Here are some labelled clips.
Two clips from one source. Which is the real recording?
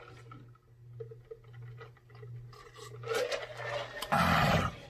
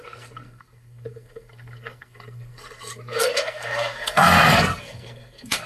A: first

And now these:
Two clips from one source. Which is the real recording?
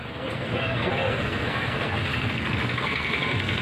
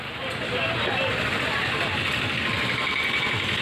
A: second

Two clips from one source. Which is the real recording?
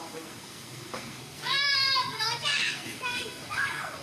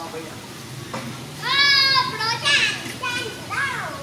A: second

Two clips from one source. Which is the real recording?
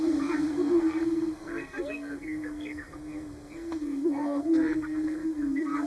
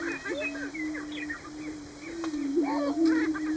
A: second